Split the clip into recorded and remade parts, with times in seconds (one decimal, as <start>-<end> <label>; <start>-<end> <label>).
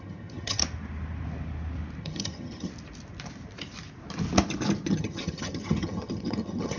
0.0-0.6 remade; 0.6-2.0 recorded; 2.0-2.7 remade; 2.7-4.9 recorded; 4.9-6.8 remade